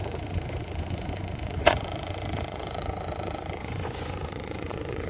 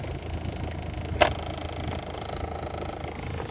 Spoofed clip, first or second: first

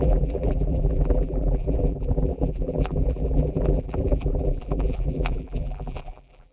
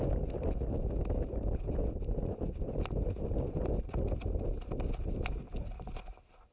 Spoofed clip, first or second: first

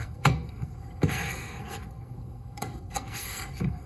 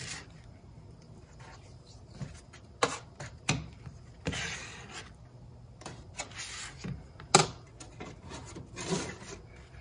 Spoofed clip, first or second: first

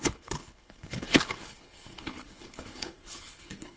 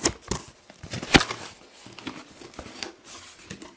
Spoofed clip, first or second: first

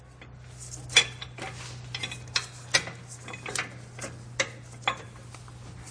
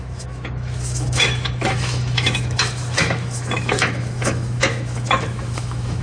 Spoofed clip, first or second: second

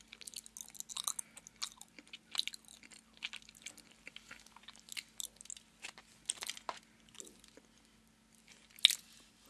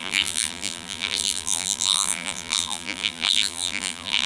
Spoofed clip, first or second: second